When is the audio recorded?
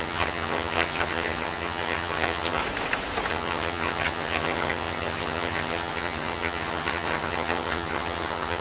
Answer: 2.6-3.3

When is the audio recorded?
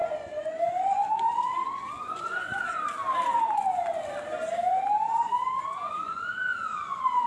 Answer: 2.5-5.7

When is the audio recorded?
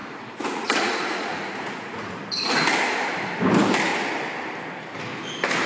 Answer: 2.1-5.7